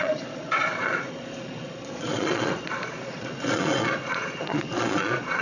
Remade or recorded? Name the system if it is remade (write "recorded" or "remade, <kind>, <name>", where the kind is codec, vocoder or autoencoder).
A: remade, vocoder, Vocos